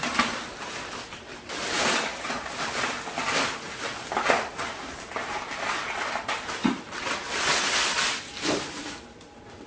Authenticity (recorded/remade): recorded